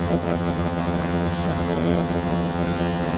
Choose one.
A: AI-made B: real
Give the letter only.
A